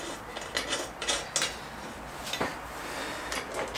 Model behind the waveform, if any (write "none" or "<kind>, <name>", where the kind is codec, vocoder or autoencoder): none